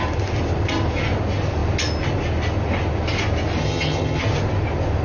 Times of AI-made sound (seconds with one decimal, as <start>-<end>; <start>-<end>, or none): 3.6-4.2

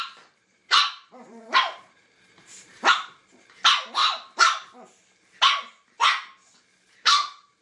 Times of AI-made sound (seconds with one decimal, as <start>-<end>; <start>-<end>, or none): 0.0-5.0; 6.9-7.6

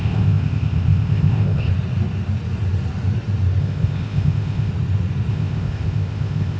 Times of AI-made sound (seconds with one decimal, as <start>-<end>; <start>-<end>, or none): 0.0-1.7; 3.6-4.7; 5.3-6.6

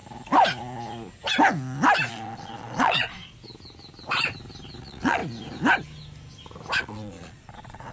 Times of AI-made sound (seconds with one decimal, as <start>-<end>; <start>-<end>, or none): 2.1-3.2; 4.8-5.2; 6.8-7.9

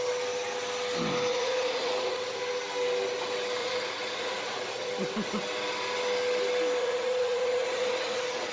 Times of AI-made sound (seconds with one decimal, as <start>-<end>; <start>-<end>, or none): 1.3-2.4; 3.6-4.9; 6.8-8.5